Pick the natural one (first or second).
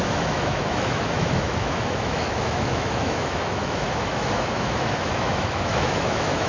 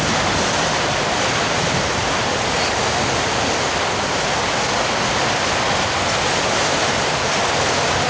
second